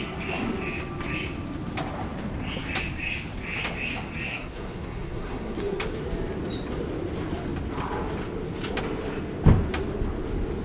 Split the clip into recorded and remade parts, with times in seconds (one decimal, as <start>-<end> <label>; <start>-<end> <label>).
0.0-4.3 recorded; 4.3-5.8 remade; 5.8-10.6 recorded